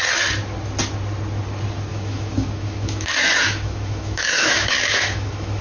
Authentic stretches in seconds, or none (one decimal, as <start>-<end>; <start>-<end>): 0.0-1.9